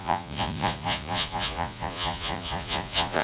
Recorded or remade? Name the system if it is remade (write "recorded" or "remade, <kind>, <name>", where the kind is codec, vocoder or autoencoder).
remade, vocoder, Vocos